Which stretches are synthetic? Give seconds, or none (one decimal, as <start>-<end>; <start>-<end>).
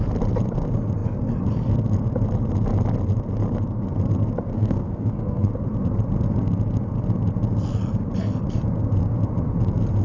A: 4.5-5.5